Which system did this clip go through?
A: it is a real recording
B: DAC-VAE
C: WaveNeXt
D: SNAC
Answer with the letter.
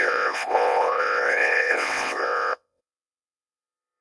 C